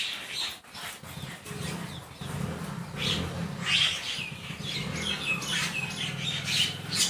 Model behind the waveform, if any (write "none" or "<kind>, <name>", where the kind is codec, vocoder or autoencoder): none